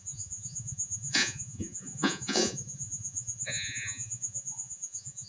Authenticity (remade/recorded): remade